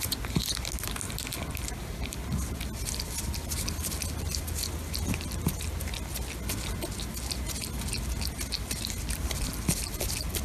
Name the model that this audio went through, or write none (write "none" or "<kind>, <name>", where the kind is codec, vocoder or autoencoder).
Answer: none